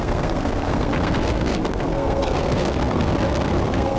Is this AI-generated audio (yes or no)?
yes